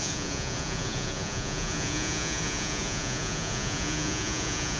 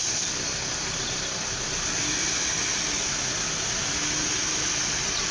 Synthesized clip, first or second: first